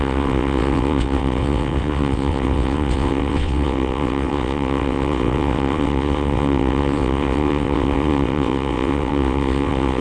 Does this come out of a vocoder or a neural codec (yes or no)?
yes